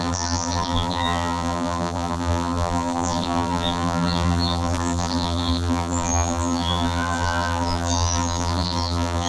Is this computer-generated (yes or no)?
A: yes